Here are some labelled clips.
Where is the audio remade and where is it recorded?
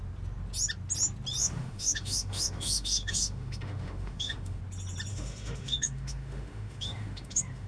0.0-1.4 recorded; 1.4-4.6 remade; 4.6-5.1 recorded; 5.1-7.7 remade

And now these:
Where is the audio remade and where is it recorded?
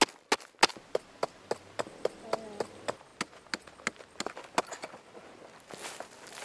0.0-6.4 recorded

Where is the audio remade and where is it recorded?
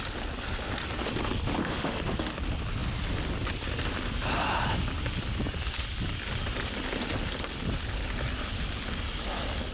0.0-1.6 recorded; 1.6-2.1 remade; 2.1-9.7 recorded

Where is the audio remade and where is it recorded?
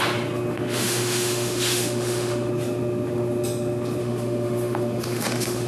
0.0-0.5 recorded; 0.5-2.5 remade; 2.5-4.0 recorded; 4.0-5.7 remade